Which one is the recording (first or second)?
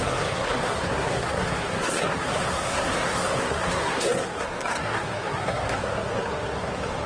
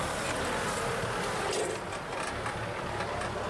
second